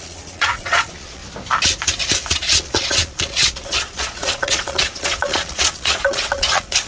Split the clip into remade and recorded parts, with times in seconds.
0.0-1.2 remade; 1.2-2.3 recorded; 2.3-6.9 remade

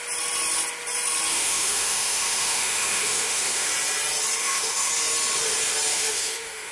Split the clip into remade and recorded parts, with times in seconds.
0.0-1.3 recorded; 1.3-3.7 remade; 3.7-4.4 recorded; 4.4-4.9 remade; 4.9-5.9 recorded; 5.9-6.7 remade

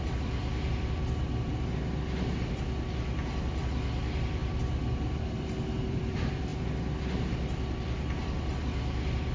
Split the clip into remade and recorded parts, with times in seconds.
0.0-1.5 remade; 1.5-2.5 recorded; 2.5-6.5 remade; 6.5-7.3 recorded; 7.3-9.3 remade

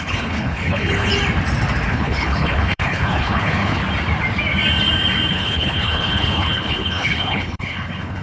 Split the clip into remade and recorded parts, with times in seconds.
0.0-1.1 remade; 1.1-1.9 recorded; 1.9-3.8 remade; 3.8-5.3 recorded; 5.3-8.2 remade